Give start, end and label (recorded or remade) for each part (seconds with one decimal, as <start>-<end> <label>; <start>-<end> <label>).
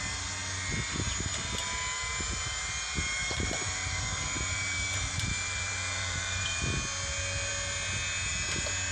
0.0-3.2 recorded; 3.2-6.6 remade; 6.6-8.9 recorded